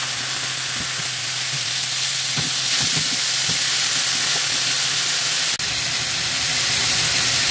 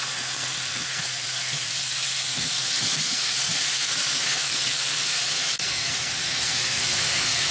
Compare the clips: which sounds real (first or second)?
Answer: first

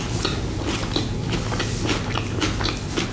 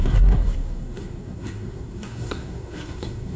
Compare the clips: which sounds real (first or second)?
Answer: first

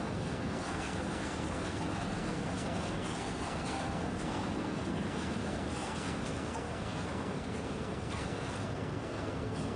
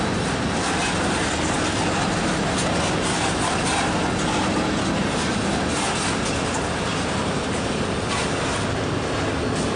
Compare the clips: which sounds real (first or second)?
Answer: second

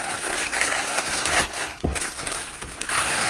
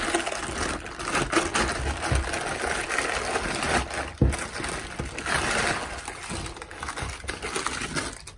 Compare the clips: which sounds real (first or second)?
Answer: second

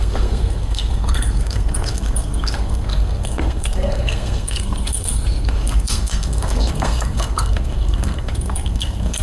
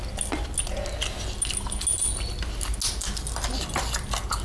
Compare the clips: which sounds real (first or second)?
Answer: second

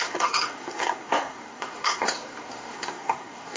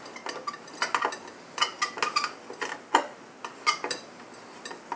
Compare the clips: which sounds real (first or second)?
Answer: second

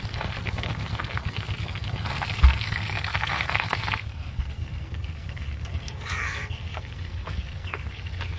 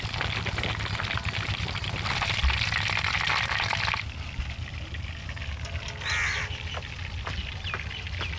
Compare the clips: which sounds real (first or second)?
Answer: second